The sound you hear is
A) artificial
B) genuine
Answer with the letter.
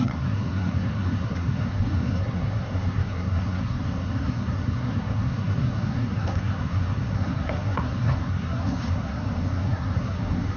A